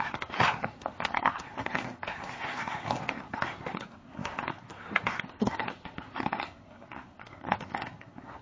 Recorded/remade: remade